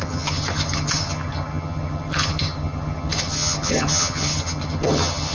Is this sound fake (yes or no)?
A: yes